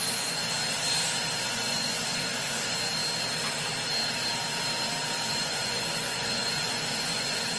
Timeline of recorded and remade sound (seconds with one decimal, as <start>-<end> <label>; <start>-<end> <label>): 0.0-0.4 remade; 0.4-1.4 recorded; 1.4-3.0 remade; 3.0-5.3 recorded; 5.3-7.6 remade